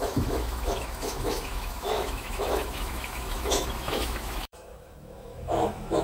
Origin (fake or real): fake